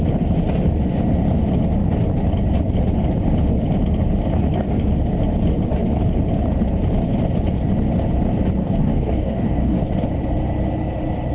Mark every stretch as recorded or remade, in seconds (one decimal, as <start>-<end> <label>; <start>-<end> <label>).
0.0-8.6 recorded; 8.6-9.8 remade; 9.8-11.3 recorded